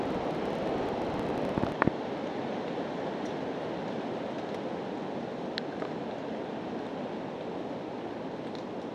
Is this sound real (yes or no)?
yes